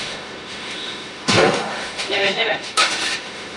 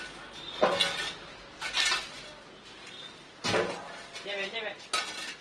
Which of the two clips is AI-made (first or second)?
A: first